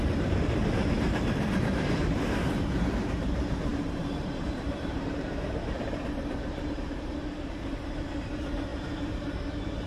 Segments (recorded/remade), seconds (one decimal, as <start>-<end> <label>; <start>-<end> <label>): 0.0-9.9 remade